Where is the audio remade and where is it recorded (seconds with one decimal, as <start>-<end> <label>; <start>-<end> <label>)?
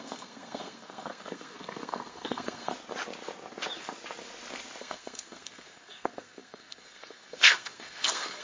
0.0-2.7 remade; 2.7-4.8 recorded; 4.8-8.4 remade